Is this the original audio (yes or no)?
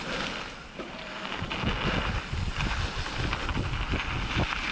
yes